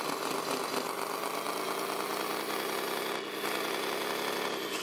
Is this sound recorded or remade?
recorded